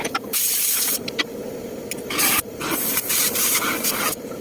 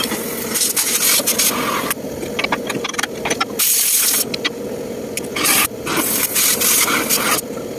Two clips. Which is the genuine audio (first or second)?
second